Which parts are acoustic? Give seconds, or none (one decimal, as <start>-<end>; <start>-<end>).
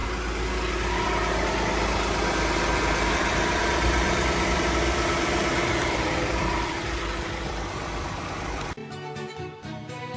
0.0-3.1; 8.8-9.3